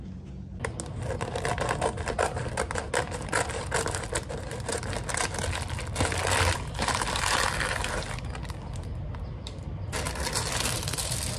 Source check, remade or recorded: recorded